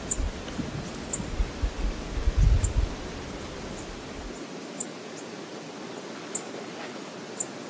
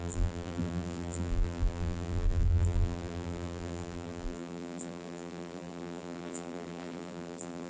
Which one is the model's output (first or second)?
second